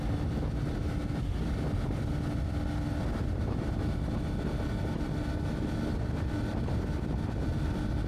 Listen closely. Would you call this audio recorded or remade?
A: recorded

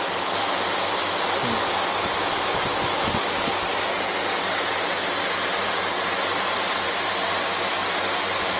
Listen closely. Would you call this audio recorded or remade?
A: recorded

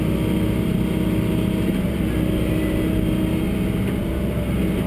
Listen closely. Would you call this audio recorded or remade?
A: recorded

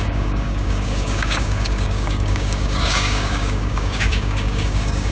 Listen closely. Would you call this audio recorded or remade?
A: remade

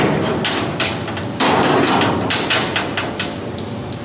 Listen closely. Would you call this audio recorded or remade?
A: recorded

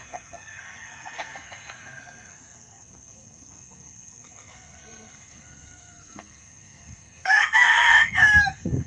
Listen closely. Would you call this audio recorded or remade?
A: remade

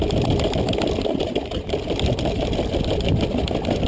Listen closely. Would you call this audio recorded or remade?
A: recorded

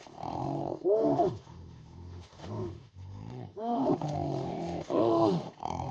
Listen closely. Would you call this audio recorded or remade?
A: remade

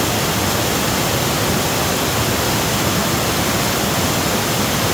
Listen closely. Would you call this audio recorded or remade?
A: recorded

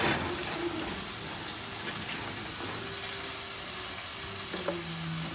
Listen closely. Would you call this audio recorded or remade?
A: recorded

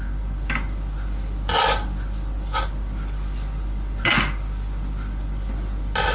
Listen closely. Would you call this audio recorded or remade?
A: recorded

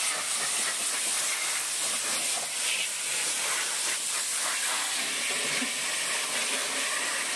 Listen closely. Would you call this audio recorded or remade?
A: recorded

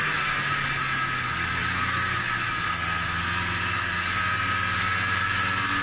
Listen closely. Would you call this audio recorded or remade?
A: recorded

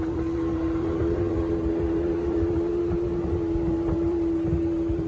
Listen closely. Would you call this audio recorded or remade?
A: remade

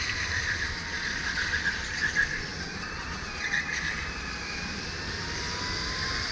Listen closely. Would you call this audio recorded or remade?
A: recorded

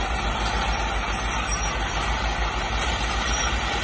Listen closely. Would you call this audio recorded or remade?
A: remade